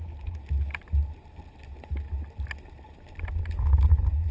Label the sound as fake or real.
real